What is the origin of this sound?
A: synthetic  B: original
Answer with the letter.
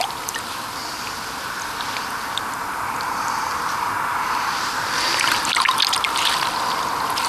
B